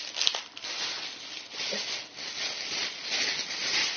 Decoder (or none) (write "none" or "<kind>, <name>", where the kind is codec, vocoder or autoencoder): none